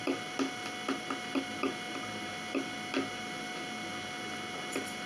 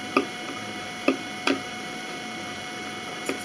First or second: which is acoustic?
first